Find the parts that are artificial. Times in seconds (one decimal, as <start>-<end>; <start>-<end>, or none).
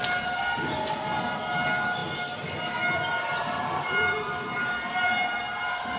none